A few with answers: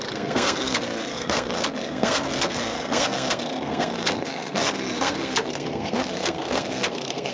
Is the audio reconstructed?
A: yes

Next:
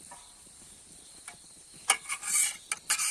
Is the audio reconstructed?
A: no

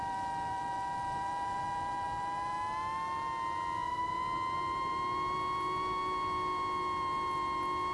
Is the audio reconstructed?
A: no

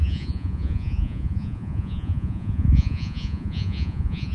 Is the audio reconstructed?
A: yes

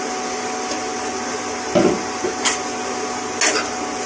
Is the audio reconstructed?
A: no